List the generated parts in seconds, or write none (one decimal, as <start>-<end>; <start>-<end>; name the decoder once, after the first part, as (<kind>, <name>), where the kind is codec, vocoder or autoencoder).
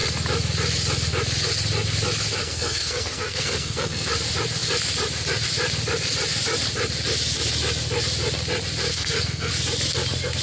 2.4-4.1 (codec, SNAC); 8.9-9.5